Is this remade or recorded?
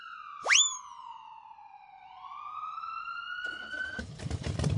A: remade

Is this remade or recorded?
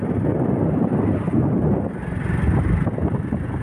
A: recorded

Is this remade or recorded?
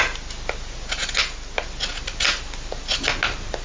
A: recorded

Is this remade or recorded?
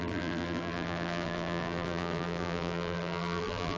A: remade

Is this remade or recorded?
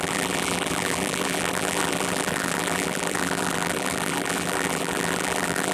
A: remade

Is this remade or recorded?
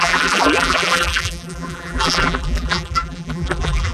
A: remade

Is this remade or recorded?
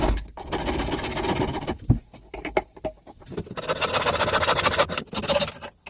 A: recorded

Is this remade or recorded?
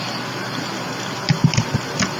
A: recorded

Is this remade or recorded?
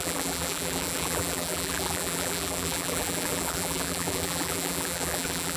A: remade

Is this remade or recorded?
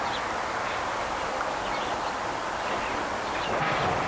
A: remade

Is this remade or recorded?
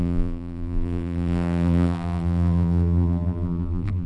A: remade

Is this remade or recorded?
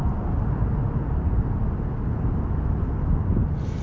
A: recorded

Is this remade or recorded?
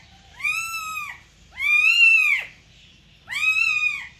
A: recorded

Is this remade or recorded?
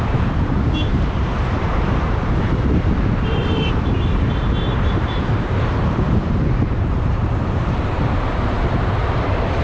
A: remade